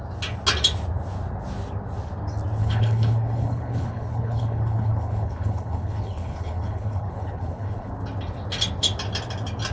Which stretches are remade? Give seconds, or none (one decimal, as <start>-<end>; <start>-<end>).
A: 2.6-7.9